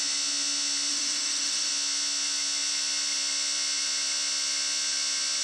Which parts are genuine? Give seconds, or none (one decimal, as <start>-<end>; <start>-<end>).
0.0-0.9; 1.7-5.4